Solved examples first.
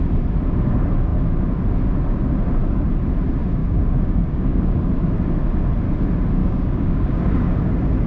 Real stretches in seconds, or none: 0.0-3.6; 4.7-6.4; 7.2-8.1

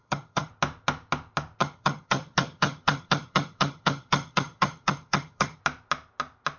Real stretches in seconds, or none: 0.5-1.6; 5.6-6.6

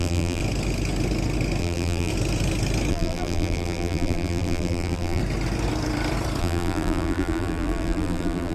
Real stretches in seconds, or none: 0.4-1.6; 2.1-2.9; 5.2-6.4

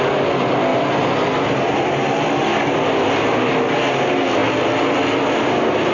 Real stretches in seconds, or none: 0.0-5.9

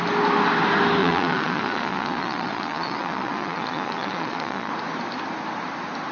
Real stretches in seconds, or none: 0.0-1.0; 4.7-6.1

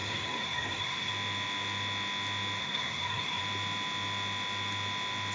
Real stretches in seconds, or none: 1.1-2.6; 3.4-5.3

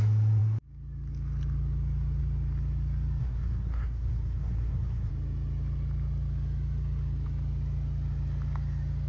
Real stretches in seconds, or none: 0.0-3.2; 5.1-9.1

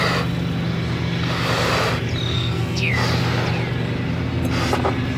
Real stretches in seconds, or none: 0.0-2.3; 2.9-5.2